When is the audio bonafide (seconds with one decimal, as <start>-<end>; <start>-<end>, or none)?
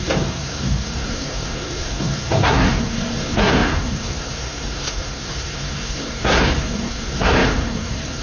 none